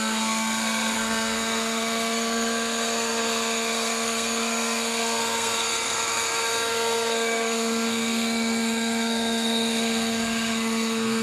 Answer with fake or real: fake